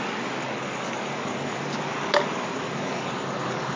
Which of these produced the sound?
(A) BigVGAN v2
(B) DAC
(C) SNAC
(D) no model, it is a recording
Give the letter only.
B